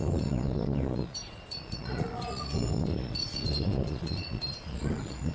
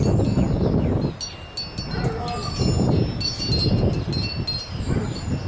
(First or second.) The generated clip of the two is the first